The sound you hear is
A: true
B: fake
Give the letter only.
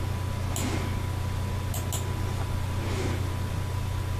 A